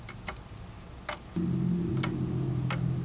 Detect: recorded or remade recorded